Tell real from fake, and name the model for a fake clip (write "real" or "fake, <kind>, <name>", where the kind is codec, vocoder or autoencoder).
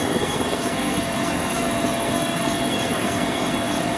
fake, codec, SNAC